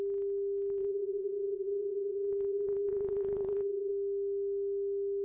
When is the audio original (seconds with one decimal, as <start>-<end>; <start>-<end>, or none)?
0.0-0.8; 3.9-5.2